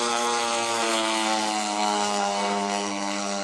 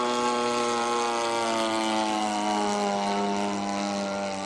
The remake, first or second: first